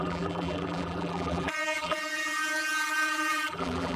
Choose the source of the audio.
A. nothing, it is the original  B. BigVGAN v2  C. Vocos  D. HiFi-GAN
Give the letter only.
B